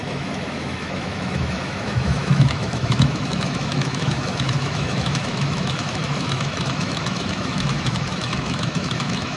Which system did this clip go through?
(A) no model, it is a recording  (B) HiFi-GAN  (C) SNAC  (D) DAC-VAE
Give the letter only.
D